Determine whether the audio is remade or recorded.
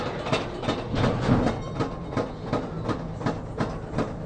recorded